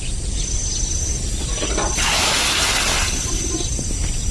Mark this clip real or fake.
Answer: real